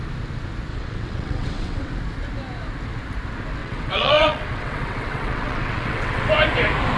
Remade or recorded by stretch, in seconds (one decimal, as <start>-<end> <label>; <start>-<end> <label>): 0.0-0.7 recorded; 0.7-1.9 remade; 1.9-3.6 recorded; 3.6-6.3 remade; 6.3-7.0 recorded